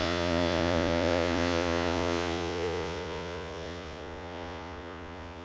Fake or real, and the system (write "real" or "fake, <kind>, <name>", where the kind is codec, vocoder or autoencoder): fake, vocoder, Vocos